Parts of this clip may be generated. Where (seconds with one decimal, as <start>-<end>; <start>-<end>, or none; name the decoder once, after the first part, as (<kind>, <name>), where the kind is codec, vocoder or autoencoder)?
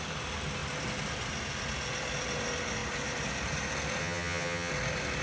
4.0-4.7 (vocoder, HiFi-GAN)